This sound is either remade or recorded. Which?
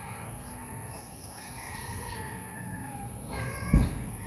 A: remade